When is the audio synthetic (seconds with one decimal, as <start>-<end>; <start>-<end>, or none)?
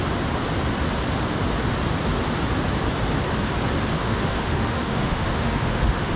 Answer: 4.0-6.2